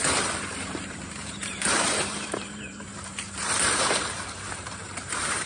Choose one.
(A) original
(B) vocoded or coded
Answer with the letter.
B